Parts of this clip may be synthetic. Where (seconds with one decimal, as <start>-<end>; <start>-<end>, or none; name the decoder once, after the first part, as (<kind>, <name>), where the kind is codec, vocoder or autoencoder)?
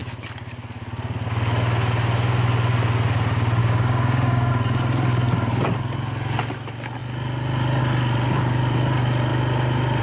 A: 3.6-4.5 (codec, DAC)